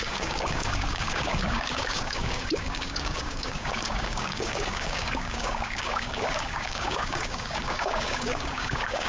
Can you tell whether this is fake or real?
fake